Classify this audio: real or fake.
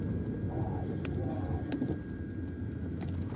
real